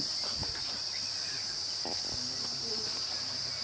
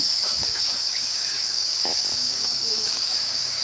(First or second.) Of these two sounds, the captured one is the first